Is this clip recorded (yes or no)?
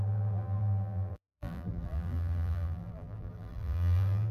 no